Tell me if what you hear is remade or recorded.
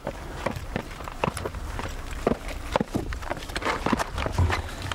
remade